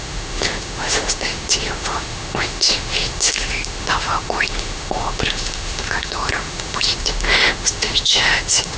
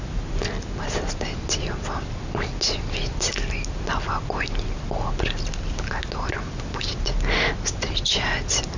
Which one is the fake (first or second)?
first